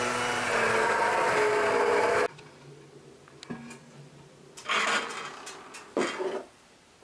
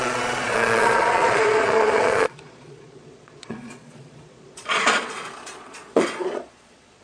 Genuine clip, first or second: first